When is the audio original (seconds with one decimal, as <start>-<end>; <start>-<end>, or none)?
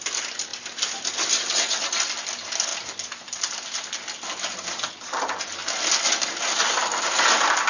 0.0-2.7; 3.4-7.7